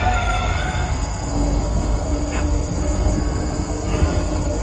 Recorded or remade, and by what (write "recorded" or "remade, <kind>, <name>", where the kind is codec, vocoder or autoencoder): remade, codec, SNAC